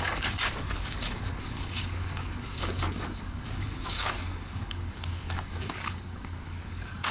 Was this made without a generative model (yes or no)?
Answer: no